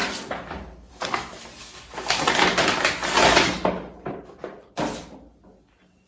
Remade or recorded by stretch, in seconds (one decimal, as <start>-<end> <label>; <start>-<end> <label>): 0.0-1.6 recorded; 1.6-2.2 remade; 2.2-6.1 recorded

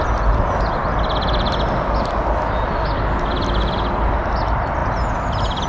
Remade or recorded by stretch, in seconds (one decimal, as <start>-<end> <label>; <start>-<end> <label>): 0.0-5.7 recorded

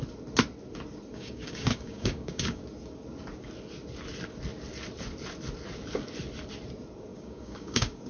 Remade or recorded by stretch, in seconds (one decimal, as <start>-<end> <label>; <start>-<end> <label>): 0.0-1.1 recorded; 1.1-2.6 remade; 2.6-7.1 recorded; 7.1-8.1 remade

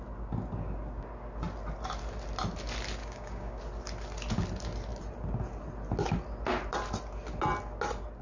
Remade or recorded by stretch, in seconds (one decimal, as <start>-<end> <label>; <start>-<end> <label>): 0.0-3.0 recorded; 3.0-3.6 remade; 3.6-8.2 recorded

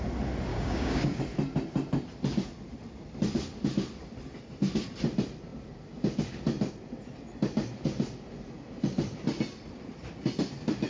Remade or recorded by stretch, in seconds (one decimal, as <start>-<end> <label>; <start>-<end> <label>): 0.0-0.5 recorded; 0.5-1.2 remade; 1.2-10.9 recorded

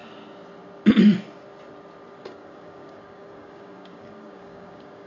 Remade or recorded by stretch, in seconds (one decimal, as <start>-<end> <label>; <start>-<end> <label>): 0.0-2.2 recorded; 2.2-5.1 remade

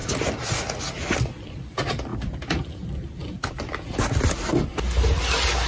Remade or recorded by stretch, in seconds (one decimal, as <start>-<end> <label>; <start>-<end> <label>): 0.0-5.7 recorded